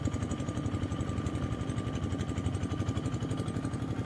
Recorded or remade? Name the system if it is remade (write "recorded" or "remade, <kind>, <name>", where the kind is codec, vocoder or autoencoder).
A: recorded